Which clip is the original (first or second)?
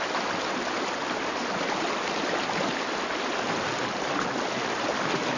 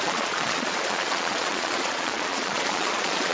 first